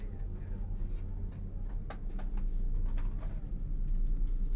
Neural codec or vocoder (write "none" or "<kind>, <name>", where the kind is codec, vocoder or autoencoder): none